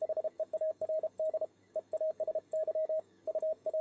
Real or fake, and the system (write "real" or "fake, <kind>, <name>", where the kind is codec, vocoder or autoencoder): fake, codec, DAC